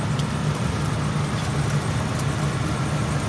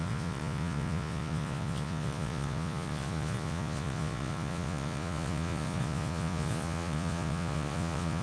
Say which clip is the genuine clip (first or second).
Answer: first